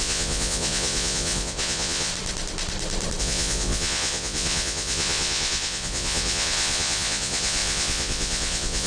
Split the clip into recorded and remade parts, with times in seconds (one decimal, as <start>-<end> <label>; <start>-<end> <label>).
0.0-2.1 remade; 2.1-3.2 recorded; 3.2-8.9 remade

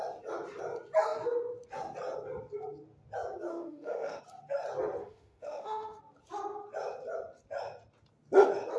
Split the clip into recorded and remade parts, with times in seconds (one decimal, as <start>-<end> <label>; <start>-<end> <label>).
0.0-3.5 recorded; 3.5-4.2 remade; 4.2-5.0 recorded; 5.0-6.0 remade; 6.0-8.8 recorded

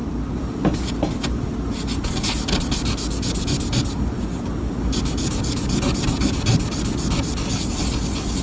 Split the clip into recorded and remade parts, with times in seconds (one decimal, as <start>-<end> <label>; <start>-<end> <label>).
0.0-8.4 recorded

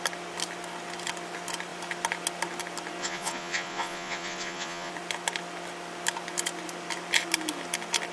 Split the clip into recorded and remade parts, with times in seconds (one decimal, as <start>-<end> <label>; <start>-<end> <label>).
0.0-3.0 recorded; 3.0-4.9 remade; 4.9-8.1 recorded

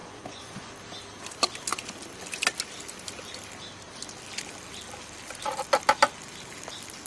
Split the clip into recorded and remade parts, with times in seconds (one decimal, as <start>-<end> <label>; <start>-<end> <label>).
0.0-0.7 remade; 0.7-7.1 recorded

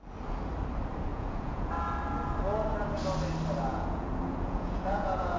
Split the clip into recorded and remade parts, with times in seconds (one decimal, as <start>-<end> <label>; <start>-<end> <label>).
0.0-1.1 recorded; 1.1-1.7 remade; 1.7-3.7 recorded; 3.7-5.4 remade